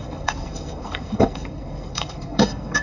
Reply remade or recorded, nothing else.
remade